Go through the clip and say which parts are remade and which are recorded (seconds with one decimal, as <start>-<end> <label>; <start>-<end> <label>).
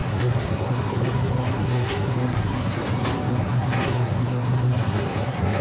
0.0-2.8 remade; 2.8-3.3 recorded; 3.3-5.6 remade